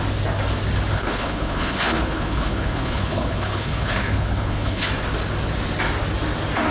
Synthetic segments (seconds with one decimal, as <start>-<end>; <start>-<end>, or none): 0.9-4.9